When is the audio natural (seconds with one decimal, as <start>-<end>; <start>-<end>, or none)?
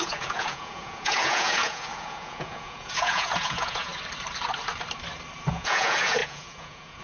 3.9-5.5